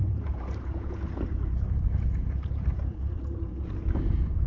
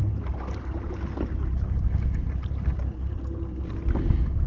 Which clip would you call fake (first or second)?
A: first